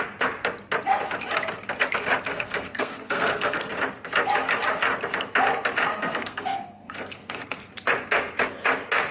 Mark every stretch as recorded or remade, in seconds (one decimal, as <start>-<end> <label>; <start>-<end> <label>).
0.0-2.3 recorded; 2.3-3.7 remade; 3.7-6.0 recorded; 6.0-7.7 remade; 7.7-9.1 recorded